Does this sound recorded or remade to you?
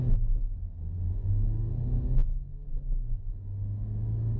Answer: recorded